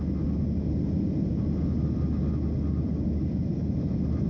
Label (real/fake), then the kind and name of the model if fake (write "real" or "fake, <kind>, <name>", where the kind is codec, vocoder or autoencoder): real